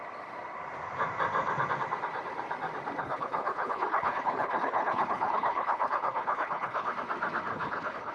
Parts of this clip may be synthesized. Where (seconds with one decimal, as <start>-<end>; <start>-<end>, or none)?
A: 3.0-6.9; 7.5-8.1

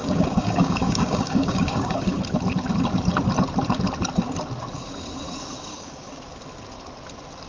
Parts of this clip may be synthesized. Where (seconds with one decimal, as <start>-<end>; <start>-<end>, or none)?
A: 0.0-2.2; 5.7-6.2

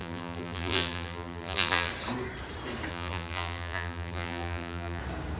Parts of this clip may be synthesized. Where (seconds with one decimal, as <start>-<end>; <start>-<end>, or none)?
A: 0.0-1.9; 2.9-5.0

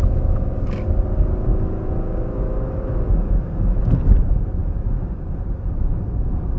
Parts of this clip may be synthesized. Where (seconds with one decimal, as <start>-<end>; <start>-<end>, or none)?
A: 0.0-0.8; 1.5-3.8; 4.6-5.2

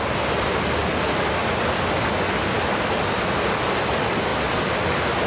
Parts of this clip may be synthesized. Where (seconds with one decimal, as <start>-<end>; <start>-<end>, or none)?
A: none